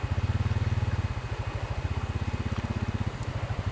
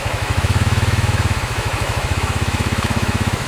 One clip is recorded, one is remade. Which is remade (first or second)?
second